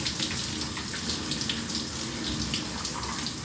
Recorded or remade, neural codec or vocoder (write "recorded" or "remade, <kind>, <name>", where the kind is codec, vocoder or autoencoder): recorded